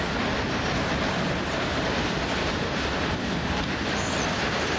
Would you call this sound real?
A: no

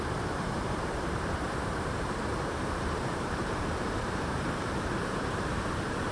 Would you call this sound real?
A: no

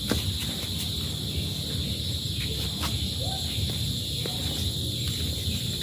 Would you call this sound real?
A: yes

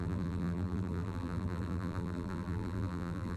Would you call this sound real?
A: no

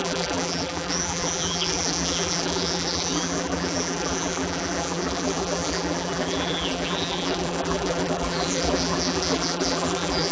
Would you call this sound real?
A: no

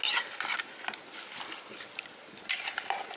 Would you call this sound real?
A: yes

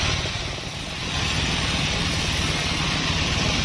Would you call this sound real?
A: yes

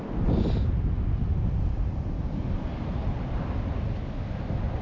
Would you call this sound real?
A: yes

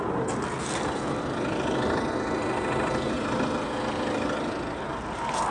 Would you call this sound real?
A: yes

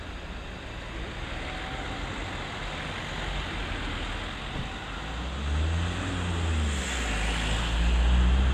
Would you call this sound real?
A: yes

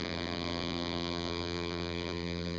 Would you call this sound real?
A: no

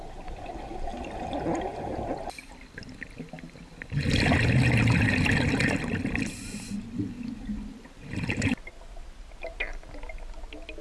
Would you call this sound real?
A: yes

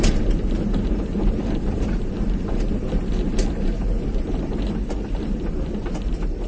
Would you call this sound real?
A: no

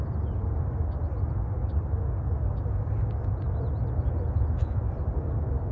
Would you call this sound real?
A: yes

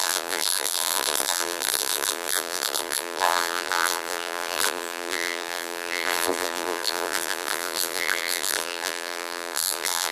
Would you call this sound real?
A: no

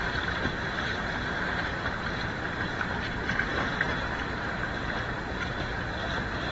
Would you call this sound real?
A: no